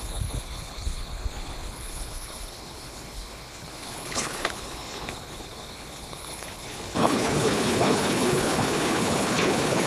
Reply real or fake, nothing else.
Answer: fake